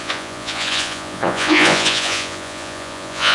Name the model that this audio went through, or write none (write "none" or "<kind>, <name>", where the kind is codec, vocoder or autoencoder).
vocoder, Vocos